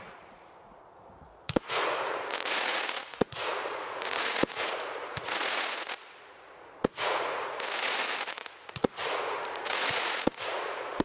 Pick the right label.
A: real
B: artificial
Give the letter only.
B